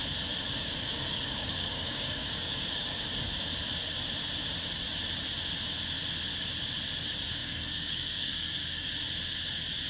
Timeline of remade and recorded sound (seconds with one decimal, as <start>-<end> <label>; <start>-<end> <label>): 0.0-0.6 recorded; 0.6-3.0 remade; 3.0-7.4 recorded; 7.4-8.9 remade; 8.9-9.9 recorded